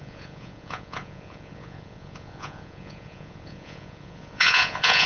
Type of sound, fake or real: fake